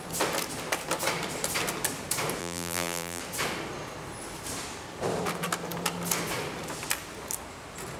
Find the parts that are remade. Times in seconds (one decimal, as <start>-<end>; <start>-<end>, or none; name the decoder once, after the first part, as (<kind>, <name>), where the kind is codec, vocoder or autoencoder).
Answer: 2.4-3.2 (vocoder, BigVGAN v2)